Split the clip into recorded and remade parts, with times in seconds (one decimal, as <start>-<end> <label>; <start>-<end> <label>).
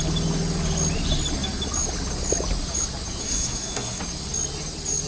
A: 0.0-3.2 recorded; 3.2-4.0 remade; 4.0-5.1 recorded